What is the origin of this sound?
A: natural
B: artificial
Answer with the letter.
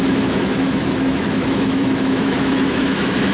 B